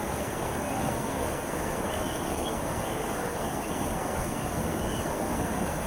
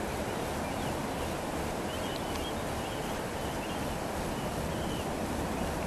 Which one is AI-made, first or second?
first